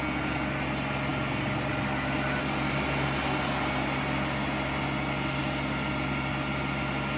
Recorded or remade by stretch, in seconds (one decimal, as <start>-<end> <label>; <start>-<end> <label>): 0.0-7.2 recorded